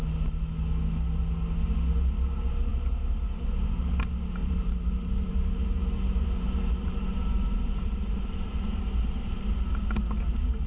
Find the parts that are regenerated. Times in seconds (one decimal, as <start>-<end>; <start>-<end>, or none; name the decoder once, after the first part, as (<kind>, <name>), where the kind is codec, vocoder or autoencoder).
4.4-9.5 (vocoder, BigVGAN v2)